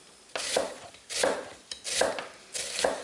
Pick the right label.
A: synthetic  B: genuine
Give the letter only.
B